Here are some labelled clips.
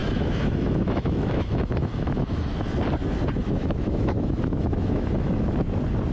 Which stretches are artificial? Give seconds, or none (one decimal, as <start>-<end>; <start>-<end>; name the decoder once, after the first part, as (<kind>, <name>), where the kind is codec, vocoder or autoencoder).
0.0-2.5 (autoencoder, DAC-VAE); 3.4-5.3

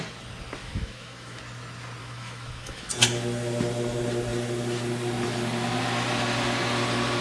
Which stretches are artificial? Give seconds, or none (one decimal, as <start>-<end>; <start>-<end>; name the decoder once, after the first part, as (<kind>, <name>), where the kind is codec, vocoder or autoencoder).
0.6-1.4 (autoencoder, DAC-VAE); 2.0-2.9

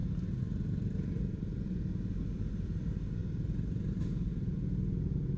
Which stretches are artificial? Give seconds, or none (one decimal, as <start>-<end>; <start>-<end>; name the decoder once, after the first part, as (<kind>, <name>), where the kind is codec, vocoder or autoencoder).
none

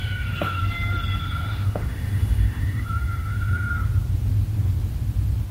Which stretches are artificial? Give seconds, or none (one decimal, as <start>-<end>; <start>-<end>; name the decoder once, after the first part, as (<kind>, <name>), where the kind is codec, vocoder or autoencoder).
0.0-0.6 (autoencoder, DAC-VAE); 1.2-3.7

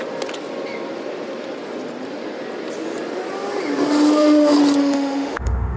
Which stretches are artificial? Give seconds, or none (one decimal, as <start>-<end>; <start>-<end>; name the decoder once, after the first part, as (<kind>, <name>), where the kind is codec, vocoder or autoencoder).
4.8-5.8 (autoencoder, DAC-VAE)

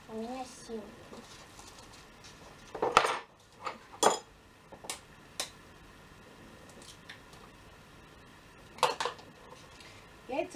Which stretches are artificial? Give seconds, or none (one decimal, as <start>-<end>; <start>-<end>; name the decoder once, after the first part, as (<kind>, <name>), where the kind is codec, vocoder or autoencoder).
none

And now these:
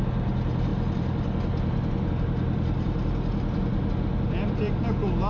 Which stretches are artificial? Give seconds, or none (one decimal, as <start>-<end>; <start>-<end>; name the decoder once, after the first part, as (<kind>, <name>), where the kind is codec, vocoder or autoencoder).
none